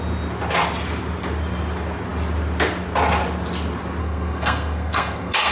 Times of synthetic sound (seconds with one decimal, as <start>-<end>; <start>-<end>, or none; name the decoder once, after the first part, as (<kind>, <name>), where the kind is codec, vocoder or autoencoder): 4.0-5.5 (codec, SNAC)